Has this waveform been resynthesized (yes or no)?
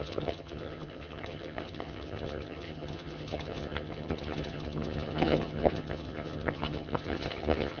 yes